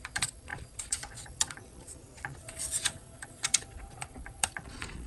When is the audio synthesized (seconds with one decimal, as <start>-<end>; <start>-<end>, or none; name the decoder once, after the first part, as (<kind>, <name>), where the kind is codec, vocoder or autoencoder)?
0.0-5.1 (vocoder, Vocos)